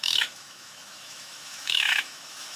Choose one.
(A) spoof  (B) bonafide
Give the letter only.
A